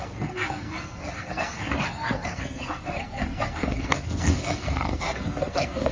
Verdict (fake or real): fake